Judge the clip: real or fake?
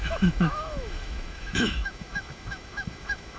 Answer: fake